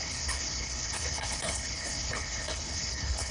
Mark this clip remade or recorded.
remade